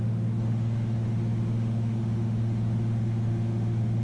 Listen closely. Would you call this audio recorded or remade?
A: remade